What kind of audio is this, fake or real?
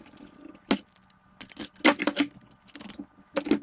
real